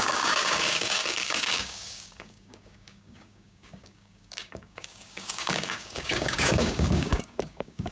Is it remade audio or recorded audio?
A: remade